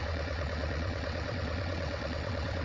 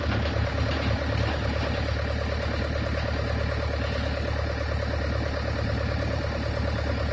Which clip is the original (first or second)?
second